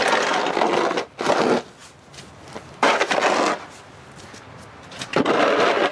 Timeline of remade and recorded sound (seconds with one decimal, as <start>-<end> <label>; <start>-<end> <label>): 0.0-5.9 recorded